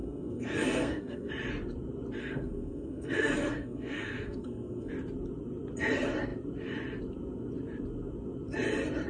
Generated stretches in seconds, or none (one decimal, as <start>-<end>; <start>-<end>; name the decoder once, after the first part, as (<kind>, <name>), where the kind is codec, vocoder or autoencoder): 0.0-1.3 (codec, SNAC); 2.2-4.9